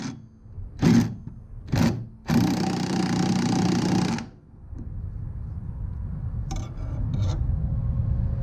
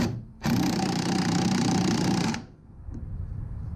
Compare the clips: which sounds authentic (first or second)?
first